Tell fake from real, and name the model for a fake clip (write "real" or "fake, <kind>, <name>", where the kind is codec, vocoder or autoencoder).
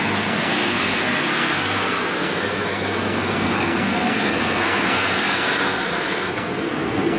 fake, codec, SNAC